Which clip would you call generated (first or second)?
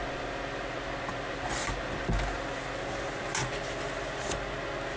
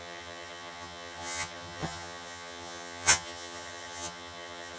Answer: second